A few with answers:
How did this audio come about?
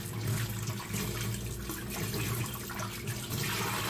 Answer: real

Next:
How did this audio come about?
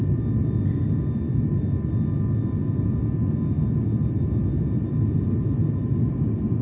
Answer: real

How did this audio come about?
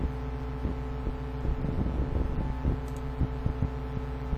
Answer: real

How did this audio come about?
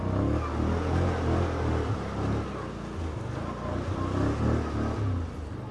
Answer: real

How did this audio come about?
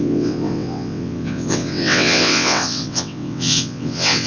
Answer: fake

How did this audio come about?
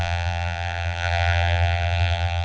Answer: fake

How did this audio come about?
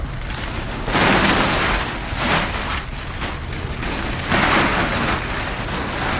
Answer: real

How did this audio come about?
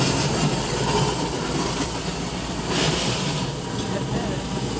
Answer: real